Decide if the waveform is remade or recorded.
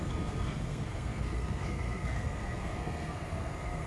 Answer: remade